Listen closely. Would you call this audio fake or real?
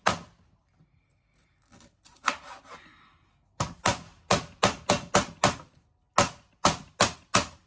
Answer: real